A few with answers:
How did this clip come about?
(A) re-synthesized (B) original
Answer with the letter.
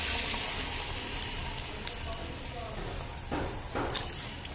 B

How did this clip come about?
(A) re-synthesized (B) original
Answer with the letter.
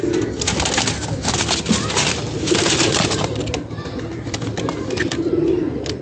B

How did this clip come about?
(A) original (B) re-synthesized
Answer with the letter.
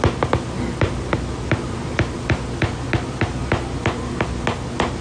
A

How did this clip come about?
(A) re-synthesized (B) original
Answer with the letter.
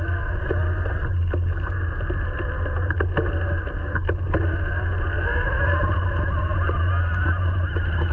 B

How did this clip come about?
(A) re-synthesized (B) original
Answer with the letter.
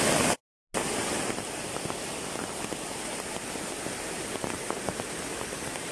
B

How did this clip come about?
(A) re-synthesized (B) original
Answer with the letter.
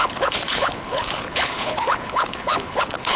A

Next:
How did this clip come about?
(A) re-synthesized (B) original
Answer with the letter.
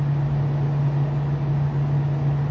B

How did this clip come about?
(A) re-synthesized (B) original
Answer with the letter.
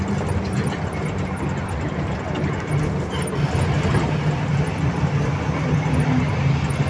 B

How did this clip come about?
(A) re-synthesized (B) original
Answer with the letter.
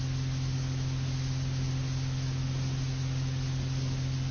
B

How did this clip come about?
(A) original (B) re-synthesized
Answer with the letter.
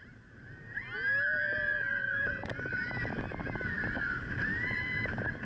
A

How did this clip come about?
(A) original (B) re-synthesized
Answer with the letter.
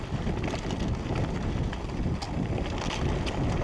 A